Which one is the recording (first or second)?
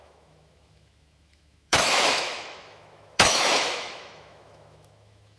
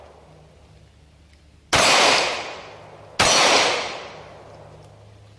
second